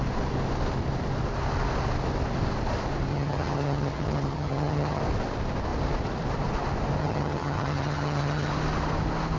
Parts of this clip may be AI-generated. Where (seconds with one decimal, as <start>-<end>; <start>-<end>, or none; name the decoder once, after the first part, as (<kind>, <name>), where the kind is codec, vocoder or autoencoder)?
3.1-5.0 (vocoder, HiFi-GAN); 7.0-8.5